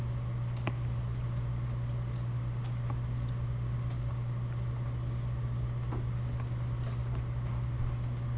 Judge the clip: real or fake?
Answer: real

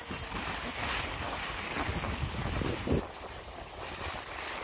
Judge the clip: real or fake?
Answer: real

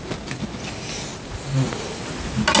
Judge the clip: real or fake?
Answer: real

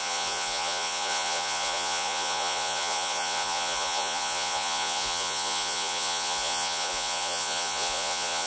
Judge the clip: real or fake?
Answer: fake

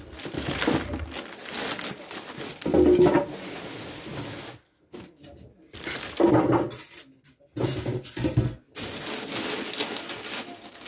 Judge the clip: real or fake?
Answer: real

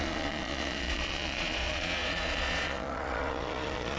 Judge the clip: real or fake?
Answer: fake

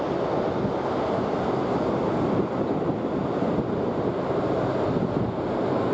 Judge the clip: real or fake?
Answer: real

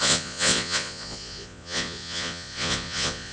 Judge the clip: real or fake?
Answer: fake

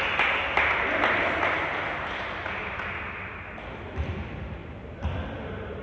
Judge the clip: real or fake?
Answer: real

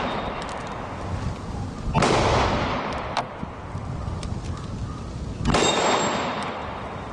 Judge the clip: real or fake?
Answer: real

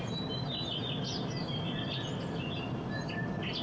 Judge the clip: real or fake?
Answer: real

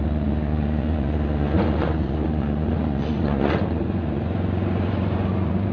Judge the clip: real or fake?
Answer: fake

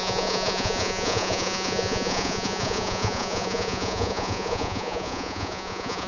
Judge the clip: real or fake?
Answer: fake